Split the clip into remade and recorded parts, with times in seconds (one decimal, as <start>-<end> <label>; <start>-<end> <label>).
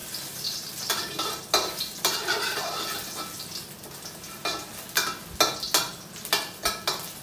0.0-1.0 remade; 1.0-7.2 recorded